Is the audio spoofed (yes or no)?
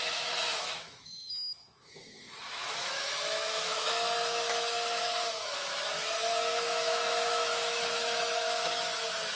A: yes